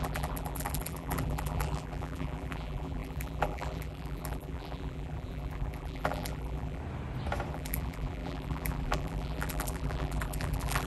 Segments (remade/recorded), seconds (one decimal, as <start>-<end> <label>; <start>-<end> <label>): 0.0-6.8 remade; 6.8-7.5 recorded; 7.5-10.9 remade